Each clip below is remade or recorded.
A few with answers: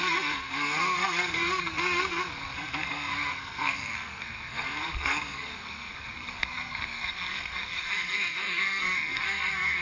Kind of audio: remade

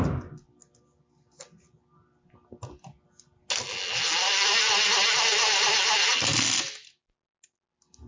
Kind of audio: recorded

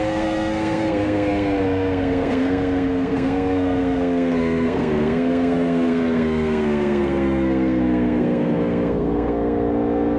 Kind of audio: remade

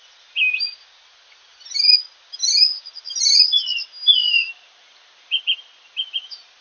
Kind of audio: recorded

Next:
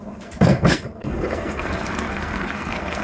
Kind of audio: remade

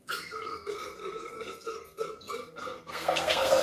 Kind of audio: remade